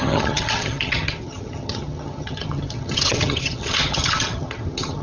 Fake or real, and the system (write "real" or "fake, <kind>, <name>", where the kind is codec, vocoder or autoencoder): fake, vocoder, HiFi-GAN